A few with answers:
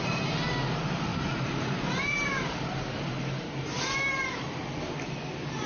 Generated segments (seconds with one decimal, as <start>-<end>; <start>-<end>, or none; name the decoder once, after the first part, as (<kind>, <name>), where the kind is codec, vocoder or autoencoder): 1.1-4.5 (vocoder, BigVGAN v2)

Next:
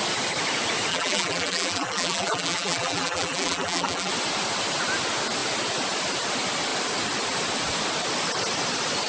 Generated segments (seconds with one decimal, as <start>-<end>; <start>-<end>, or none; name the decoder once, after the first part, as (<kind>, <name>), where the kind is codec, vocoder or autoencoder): 0.9-4.1 (vocoder, BigVGAN v2)

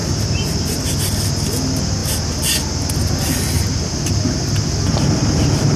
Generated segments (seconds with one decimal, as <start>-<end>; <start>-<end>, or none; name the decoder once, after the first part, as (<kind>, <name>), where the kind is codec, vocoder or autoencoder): 0.0-0.9 (vocoder, BigVGAN v2)

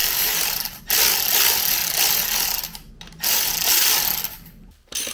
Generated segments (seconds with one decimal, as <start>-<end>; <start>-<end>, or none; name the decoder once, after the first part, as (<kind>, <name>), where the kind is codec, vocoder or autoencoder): 0.0-0.8 (vocoder, BigVGAN v2); 4.2-5.1